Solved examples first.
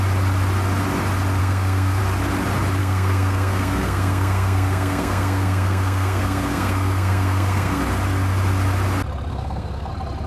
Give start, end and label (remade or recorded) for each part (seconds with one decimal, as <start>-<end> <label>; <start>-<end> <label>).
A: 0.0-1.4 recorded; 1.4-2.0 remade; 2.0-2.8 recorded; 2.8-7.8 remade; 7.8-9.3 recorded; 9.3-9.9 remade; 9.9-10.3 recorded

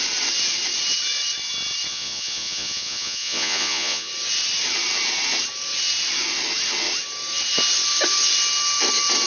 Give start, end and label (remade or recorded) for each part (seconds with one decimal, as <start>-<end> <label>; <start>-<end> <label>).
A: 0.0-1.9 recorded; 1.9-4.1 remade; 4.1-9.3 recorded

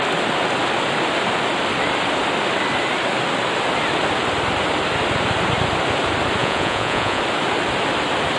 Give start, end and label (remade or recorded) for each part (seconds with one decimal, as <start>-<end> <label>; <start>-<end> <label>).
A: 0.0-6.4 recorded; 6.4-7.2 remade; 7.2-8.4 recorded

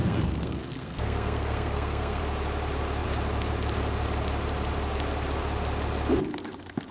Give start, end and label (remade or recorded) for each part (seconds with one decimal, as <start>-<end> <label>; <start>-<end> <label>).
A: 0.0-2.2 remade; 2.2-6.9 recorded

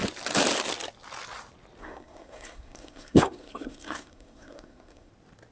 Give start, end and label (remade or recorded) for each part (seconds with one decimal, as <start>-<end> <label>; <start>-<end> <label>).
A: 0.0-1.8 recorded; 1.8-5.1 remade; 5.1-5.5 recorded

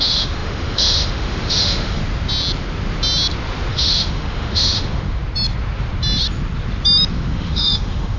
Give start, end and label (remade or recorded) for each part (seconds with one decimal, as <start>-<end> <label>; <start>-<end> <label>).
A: 0.0-2.0 remade; 2.0-3.7 recorded; 3.7-5.2 remade; 5.2-7.1 recorded; 7.1-8.2 remade

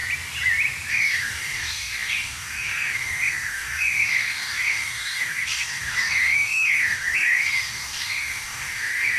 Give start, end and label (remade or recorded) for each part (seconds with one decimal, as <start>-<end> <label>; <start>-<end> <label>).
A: 0.0-0.9 recorded; 0.9-9.2 remade

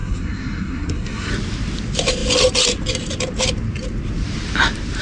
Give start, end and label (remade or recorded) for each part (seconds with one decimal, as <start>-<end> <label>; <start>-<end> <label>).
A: 0.0-1.3 remade; 1.3-5.0 recorded